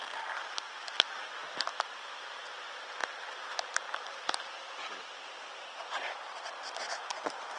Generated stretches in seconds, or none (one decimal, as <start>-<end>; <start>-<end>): 1.4-1.9; 3.0-5.0